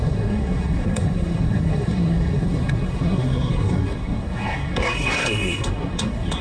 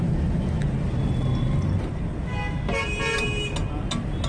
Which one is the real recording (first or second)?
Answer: second